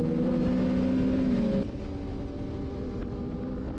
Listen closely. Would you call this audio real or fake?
real